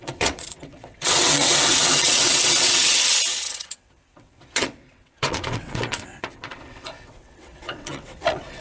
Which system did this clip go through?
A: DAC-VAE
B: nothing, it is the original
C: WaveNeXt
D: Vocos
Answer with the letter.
C